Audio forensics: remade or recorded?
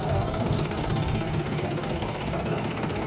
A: remade